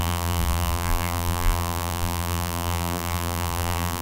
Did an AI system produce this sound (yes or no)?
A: yes